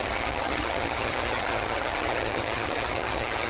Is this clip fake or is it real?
fake